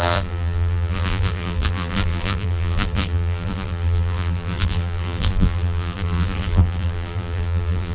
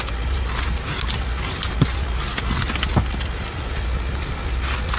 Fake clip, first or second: first